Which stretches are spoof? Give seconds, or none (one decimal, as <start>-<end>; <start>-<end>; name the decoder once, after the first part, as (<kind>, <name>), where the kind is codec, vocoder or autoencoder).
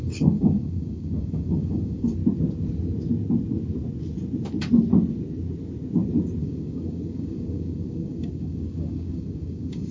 0.0-2.2 (codec, DAC); 6.4-9.9